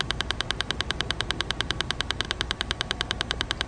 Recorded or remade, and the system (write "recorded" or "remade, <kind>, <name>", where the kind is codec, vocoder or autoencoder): remade, vocoder, BigVGAN v2